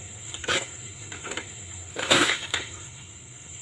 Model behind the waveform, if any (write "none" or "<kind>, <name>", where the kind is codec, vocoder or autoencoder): codec, SNAC